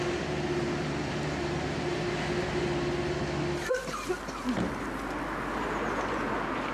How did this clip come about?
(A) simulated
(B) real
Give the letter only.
B